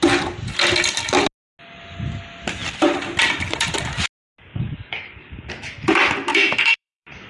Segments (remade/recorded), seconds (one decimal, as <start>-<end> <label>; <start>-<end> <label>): 0.0-4.5 recorded; 4.5-5.5 remade; 5.5-6.3 recorded; 6.3-7.3 remade